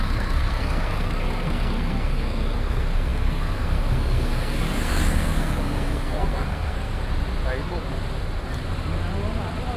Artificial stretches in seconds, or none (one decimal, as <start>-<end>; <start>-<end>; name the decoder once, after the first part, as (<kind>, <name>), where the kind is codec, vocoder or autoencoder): 0.0-7.0 (codec, SNAC)